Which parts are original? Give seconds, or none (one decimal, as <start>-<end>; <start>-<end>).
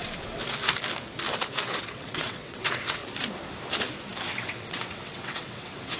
0.4-1.7; 3.0-4.4